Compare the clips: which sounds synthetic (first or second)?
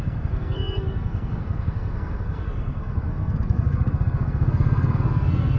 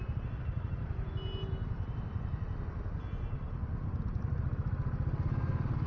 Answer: first